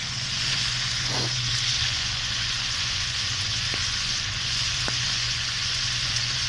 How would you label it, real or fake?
fake